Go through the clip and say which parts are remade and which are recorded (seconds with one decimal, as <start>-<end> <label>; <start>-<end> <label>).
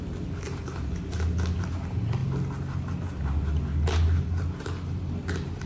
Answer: 0.0-5.7 recorded